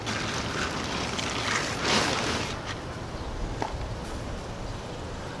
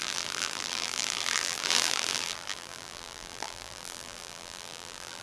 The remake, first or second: second